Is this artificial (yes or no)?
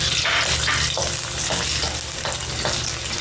no